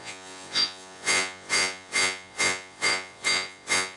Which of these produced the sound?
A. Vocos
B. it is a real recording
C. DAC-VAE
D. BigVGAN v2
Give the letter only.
A